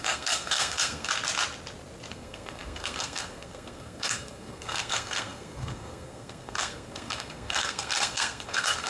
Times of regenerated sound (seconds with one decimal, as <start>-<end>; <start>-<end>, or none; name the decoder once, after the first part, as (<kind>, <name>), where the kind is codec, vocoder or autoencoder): 0.0-1.1 (codec, SNAC); 2.1-8.9